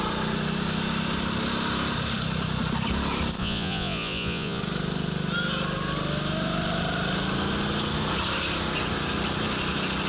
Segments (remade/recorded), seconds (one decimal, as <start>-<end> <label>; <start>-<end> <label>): 0.0-3.4 recorded; 3.4-4.6 remade; 4.6-10.1 recorded